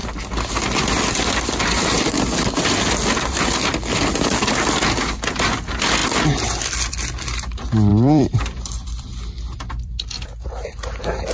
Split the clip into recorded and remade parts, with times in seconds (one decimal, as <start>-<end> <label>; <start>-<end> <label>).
0.0-0.5 remade; 0.5-7.9 recorded; 7.9-9.1 remade; 9.1-11.3 recorded